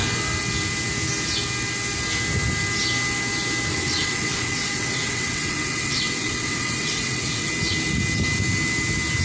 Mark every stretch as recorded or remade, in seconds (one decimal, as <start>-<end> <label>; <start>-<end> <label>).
0.0-3.7 recorded; 3.7-7.5 remade; 7.5-9.2 recorded